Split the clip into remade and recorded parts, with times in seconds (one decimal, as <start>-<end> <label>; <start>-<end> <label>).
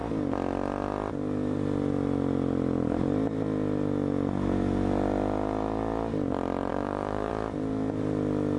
0.0-6.7 recorded; 6.7-7.3 remade; 7.3-8.6 recorded